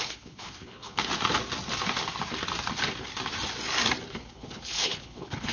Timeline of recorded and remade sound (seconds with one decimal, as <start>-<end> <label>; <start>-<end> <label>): 0.0-1.0 remade; 1.0-4.1 recorded; 4.1-5.5 remade